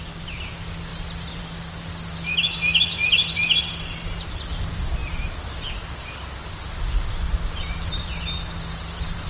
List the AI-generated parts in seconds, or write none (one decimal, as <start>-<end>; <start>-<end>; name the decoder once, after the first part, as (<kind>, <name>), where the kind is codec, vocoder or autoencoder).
none

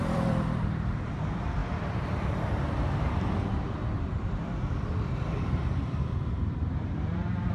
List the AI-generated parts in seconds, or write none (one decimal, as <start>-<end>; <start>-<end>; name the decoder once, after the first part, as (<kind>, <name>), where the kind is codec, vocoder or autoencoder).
0.0-7.5 (vocoder, BigVGAN v2)